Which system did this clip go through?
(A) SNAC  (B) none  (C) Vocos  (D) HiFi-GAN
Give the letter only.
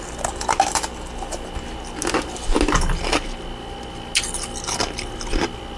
B